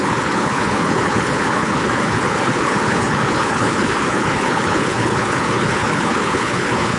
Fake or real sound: fake